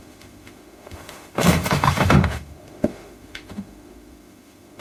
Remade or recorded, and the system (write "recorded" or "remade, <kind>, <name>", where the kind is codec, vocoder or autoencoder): remade, autoencoder, DAC-VAE